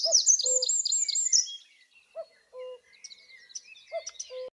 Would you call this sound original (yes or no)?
yes